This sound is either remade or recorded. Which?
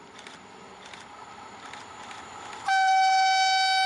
recorded